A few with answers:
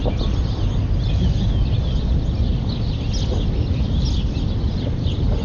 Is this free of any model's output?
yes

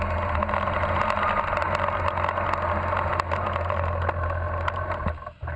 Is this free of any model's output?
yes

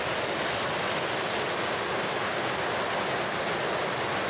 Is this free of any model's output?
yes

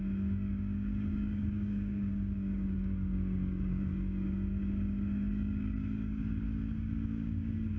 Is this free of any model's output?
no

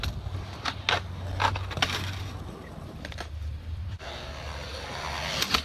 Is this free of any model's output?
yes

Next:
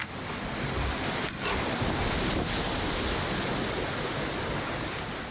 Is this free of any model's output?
yes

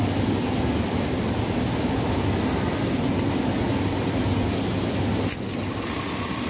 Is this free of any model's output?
yes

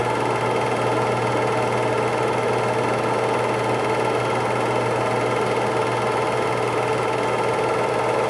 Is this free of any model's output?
yes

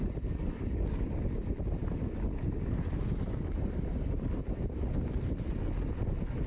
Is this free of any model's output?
yes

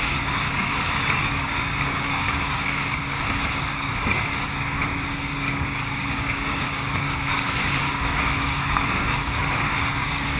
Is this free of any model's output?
no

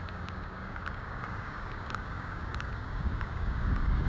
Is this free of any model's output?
no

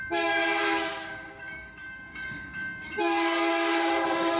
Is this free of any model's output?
no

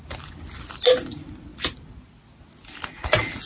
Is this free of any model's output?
yes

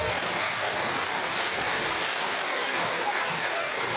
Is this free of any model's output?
no